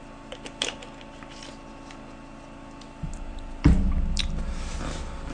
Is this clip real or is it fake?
real